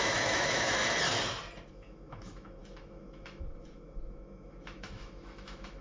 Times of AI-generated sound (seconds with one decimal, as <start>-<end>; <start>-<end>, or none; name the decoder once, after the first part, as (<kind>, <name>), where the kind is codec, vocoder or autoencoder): 0.0-0.8 (autoencoder, DAC-VAE); 1.7-5.8